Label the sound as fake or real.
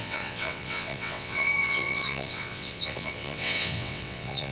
fake